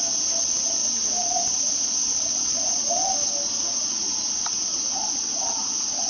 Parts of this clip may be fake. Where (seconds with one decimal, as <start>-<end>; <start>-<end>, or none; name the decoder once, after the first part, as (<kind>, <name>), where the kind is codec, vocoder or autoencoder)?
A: none